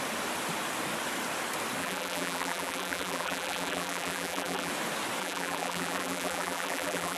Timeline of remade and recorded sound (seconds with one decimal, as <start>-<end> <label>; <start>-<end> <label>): 0.0-1.8 recorded; 1.8-4.7 remade; 4.7-5.2 recorded; 5.2-7.2 remade